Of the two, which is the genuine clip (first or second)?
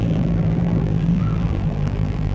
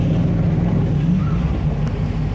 second